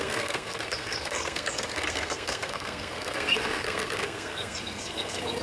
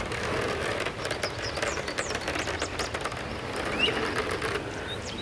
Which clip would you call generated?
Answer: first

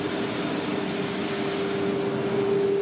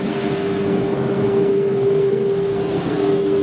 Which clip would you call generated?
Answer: second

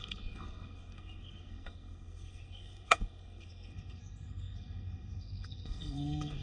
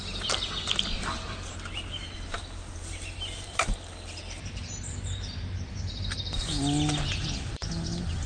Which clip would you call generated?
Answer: first